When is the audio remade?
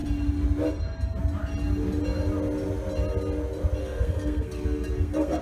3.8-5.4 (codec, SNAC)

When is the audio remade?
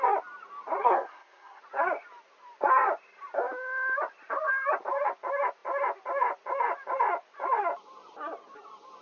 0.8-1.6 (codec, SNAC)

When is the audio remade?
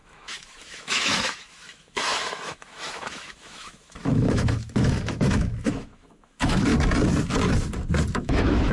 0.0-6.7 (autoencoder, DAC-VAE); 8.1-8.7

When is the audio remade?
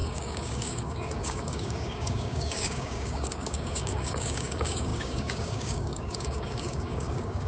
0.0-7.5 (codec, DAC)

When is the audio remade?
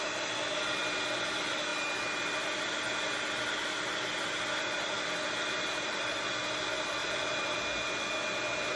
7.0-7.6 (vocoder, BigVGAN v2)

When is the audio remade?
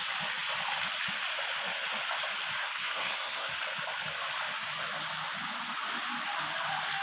2.6-3.5 (codec, SNAC)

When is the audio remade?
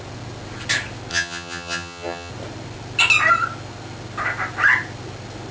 1.1-2.3 (vocoder, HiFi-GAN)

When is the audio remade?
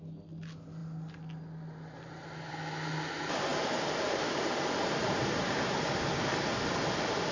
3.5-6.3 (vocoder, BigVGAN v2)